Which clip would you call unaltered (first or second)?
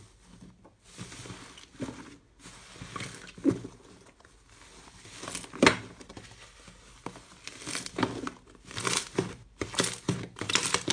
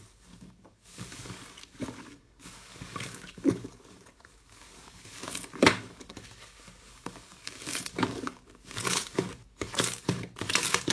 first